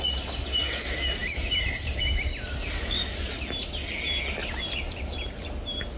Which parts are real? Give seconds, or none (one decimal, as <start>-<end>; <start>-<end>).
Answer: 0.0-1.2; 2.0-4.4; 5.5-6.0